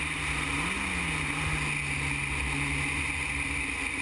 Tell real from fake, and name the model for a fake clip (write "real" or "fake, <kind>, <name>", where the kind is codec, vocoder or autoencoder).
real